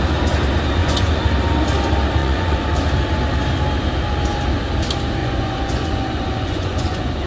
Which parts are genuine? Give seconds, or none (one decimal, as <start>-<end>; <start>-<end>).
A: 0.0-0.8; 1.3-2.2; 2.8-5.2